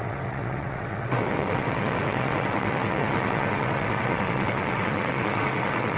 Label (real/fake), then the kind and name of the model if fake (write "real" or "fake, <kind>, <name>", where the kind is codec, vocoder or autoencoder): fake, vocoder, WaveNeXt